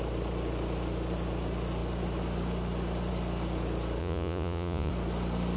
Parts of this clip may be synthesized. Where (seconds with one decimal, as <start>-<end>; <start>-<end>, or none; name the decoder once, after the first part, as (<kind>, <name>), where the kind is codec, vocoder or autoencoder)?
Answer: 4.0-4.9 (vocoder, Vocos)